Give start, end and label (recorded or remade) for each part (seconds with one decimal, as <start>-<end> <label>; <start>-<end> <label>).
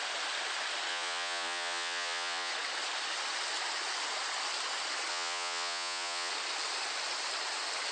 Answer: 0.0-0.9 recorded; 0.9-2.5 remade; 2.5-5.1 recorded; 5.1-6.3 remade; 6.3-7.9 recorded